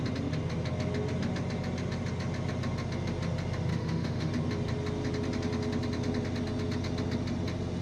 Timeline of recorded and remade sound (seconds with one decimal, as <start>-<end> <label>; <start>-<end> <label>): 0.0-3.7 recorded; 3.7-4.3 remade; 4.3-7.8 recorded